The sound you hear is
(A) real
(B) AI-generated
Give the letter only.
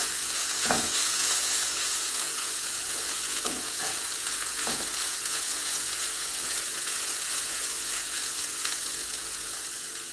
B